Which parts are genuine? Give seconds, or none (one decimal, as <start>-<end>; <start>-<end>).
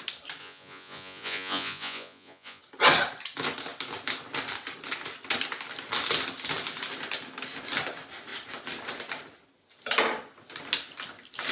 0.0-0.4; 2.6-11.5